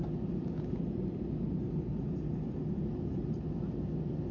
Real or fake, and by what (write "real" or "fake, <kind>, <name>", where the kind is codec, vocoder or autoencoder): real